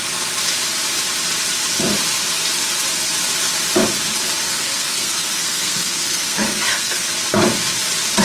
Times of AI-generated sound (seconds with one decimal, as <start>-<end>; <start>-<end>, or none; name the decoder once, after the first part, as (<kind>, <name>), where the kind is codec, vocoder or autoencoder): 4.4-7.1 (codec, SNAC)